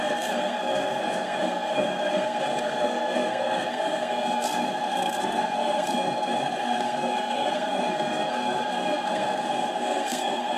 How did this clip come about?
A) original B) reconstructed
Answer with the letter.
B